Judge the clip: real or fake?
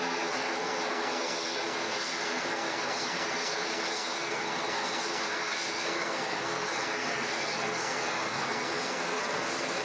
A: fake